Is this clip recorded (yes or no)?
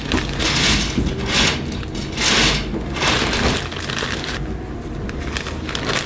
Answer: yes